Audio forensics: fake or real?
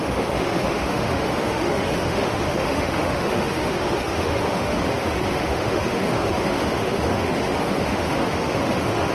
fake